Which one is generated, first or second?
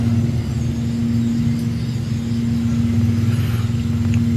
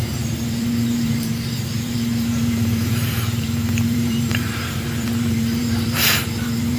second